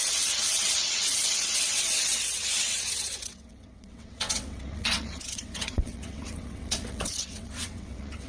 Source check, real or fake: fake